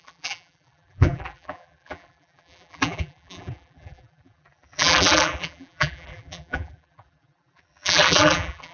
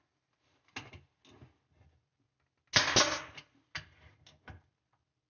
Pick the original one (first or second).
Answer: second